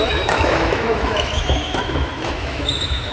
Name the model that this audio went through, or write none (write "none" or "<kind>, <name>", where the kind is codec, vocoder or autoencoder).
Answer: autoencoder, DAC-VAE